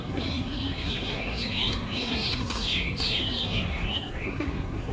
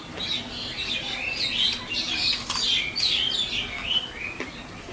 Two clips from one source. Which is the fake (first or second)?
first